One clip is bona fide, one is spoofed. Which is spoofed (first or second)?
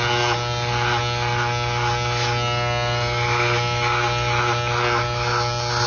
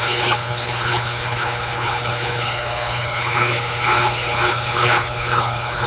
second